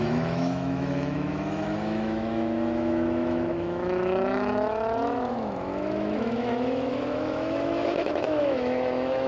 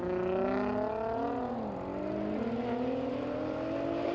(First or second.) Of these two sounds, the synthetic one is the first